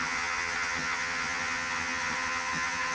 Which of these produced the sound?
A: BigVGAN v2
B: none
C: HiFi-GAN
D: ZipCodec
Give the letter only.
C